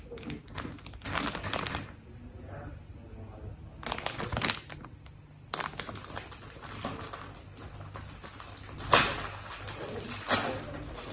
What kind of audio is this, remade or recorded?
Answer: recorded